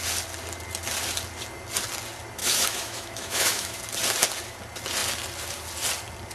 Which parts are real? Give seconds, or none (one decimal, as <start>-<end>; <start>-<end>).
0.0-2.4; 3.8-6.3

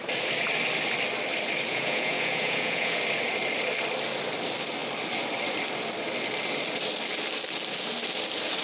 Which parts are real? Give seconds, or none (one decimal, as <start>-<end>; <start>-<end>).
0.0-1.7; 3.0-8.6